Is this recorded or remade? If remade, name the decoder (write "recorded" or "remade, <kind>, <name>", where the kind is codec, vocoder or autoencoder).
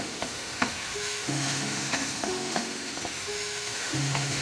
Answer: remade, autoencoder, DAC-VAE